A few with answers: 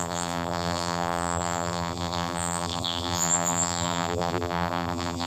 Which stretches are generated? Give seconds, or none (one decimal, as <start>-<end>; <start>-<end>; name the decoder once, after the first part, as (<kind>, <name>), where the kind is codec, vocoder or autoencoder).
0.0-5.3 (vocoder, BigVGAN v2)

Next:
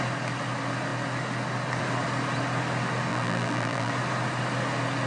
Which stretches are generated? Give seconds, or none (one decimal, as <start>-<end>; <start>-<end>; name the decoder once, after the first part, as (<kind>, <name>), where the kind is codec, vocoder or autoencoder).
3.1-3.9 (vocoder, BigVGAN v2)

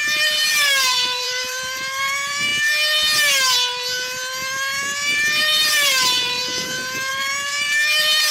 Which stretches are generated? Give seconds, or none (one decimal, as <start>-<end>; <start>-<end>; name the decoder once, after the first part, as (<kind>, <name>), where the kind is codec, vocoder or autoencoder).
0.0-2.5 (vocoder, BigVGAN v2); 5.4-8.3

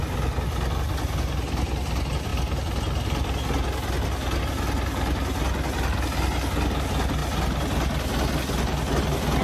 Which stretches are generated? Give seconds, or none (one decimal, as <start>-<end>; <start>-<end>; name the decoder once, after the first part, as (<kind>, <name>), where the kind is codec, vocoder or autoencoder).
none

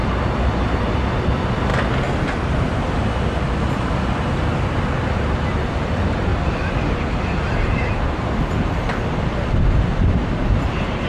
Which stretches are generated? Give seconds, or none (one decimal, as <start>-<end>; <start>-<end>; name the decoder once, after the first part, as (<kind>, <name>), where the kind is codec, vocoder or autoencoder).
0.0-1.7 (vocoder, BigVGAN v2); 2.2-6.3; 7.4-11.1

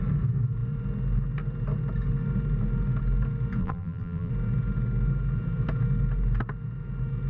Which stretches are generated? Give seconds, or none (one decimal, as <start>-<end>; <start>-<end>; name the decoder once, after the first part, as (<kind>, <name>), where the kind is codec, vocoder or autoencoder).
3.6-4.3 (vocoder, BigVGAN v2)

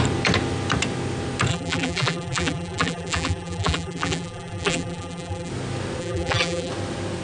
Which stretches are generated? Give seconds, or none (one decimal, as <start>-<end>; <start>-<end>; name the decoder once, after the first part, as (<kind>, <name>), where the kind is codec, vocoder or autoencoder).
1.5-5.5 (vocoder, BigVGAN v2); 6.0-6.7

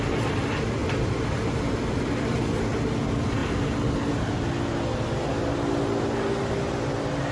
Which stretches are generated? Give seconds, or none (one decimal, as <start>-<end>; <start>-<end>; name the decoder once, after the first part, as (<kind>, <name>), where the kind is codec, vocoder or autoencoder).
none